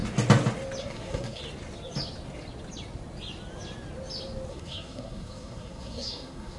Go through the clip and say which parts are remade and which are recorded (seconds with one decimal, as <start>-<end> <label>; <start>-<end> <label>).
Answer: 0.0-0.8 recorded; 0.8-1.4 remade; 1.4-4.5 recorded; 4.5-6.6 remade